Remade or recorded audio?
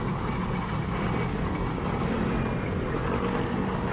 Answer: recorded